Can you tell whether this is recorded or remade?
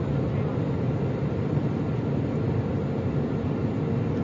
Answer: recorded